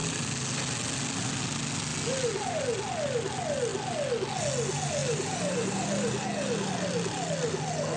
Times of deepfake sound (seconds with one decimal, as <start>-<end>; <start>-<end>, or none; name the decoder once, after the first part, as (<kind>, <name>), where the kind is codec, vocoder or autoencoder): none